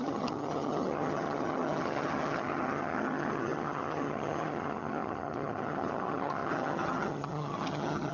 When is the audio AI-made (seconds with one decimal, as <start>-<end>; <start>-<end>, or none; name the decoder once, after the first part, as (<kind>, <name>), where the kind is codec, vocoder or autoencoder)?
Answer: 0.0-8.1 (vocoder, HiFi-GAN)